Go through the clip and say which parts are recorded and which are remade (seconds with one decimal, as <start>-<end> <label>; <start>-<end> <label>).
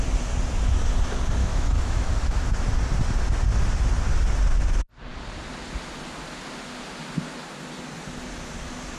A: 0.0-1.4 recorded; 1.4-2.1 remade; 2.1-9.0 recorded